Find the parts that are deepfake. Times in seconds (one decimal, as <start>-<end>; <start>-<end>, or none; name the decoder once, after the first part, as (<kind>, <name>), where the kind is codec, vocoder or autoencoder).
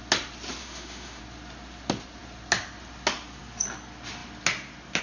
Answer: 0.6-1.2 (autoencoder, DAC-VAE)